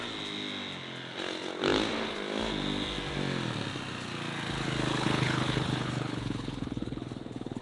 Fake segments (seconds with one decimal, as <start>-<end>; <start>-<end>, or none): 4.9-7.6